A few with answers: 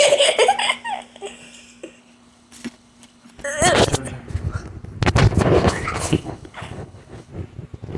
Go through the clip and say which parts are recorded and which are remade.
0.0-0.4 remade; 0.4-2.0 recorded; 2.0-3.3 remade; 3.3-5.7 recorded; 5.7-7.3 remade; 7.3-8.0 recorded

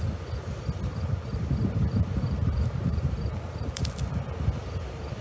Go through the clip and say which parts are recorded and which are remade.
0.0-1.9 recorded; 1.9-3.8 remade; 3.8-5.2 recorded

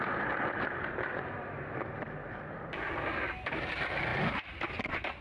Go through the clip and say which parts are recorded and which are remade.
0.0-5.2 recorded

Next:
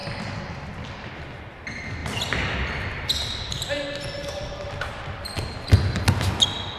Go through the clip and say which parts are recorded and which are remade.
0.0-6.8 recorded